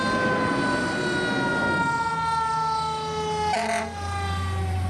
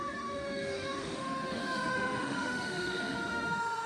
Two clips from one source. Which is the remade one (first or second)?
second